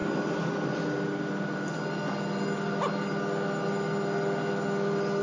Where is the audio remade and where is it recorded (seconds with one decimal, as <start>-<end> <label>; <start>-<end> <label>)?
0.0-5.2 recorded

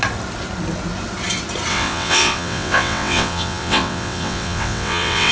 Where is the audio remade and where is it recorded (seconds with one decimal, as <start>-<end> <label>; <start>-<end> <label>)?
0.0-1.7 recorded; 1.7-5.3 remade

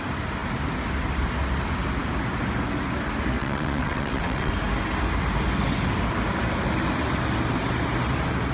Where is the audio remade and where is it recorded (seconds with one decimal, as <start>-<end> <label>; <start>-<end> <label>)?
0.0-3.4 recorded; 3.4-4.5 remade; 4.5-8.5 recorded

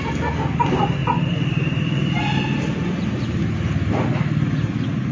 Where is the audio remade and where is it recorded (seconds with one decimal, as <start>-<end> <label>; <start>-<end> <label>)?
0.0-5.1 recorded

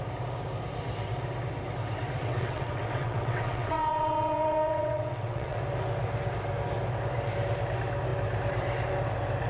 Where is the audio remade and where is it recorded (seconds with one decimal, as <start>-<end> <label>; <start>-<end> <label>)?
0.0-2.2 recorded; 2.2-5.6 remade; 5.6-9.5 recorded

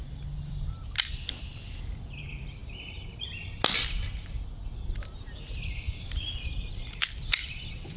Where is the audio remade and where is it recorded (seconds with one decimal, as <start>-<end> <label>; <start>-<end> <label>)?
0.0-1.5 remade; 1.5-2.2 recorded; 2.2-2.6 remade; 2.6-6.7 recorded; 6.7-8.0 remade

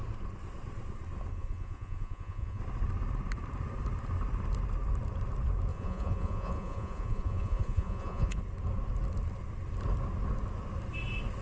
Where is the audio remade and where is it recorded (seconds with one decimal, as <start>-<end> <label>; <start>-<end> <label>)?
0.0-1.3 recorded; 1.3-2.6 remade; 2.6-5.7 recorded; 5.7-8.4 remade; 8.4-11.4 recorded

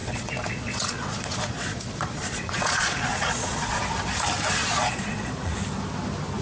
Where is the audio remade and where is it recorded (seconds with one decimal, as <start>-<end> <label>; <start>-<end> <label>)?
0.0-3.8 remade; 3.8-4.6 recorded; 4.6-5.5 remade; 5.5-6.4 recorded